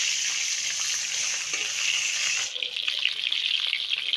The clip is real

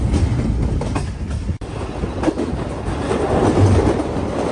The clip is real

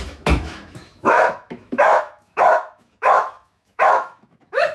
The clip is fake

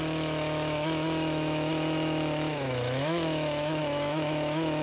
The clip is fake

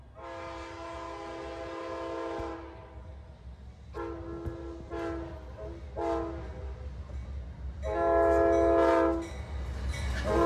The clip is real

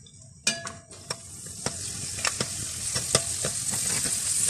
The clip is real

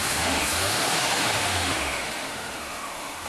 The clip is fake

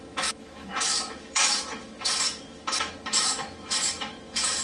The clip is fake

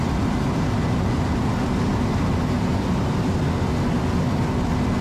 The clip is real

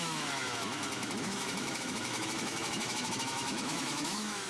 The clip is fake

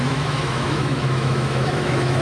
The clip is fake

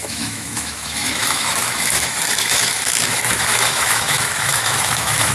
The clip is fake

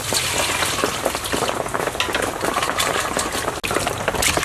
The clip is real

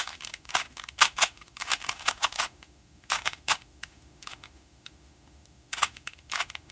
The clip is fake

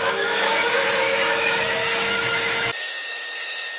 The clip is fake